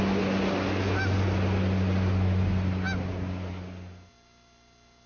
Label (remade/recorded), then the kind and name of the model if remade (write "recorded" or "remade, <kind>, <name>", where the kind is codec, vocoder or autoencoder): recorded